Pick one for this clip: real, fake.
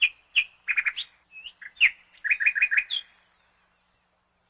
real